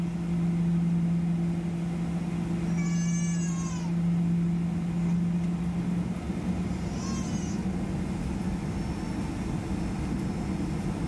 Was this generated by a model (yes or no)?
no